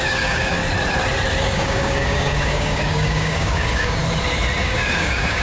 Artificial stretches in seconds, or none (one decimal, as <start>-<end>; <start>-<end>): 0.0-0.6; 1.4-4.0; 4.6-5.4